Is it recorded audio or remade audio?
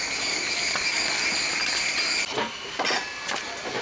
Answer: recorded